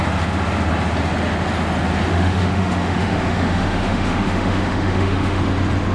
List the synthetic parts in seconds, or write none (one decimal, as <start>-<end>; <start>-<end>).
2.1-5.4